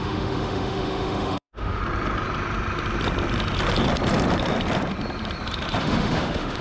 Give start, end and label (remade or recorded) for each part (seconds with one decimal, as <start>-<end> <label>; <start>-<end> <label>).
0.0-1.8 remade; 1.8-5.8 recorded; 5.8-6.6 remade